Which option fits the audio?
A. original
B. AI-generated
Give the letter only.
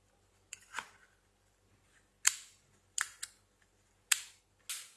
A